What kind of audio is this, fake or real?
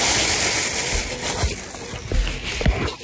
real